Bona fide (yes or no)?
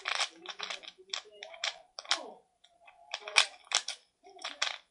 no